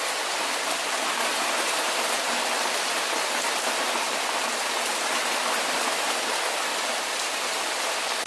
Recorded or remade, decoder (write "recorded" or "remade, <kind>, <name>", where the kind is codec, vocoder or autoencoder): recorded